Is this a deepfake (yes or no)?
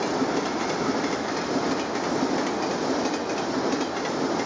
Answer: no